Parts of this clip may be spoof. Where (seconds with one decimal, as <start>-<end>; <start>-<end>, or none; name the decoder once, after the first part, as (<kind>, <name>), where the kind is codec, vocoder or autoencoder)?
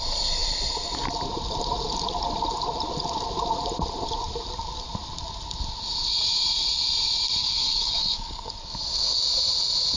7.4-8.5 (codec, DAC)